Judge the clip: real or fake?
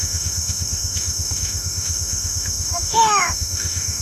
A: fake